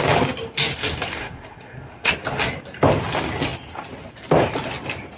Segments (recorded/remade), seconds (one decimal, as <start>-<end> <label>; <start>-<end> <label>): 0.0-1.2 recorded; 1.2-2.1 remade; 2.1-5.2 recorded